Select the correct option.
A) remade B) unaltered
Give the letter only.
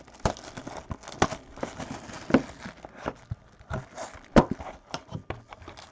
B